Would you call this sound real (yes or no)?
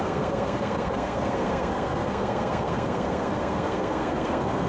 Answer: no